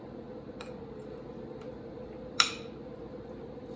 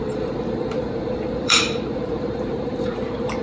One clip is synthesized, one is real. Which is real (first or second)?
first